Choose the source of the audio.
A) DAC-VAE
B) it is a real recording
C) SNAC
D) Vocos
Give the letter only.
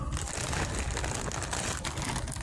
B